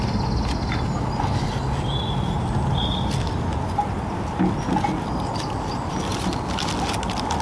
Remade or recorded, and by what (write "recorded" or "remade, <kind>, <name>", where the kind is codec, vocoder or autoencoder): recorded